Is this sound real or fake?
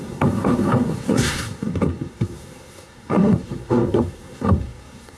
fake